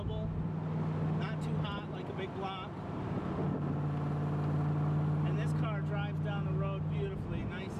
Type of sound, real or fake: real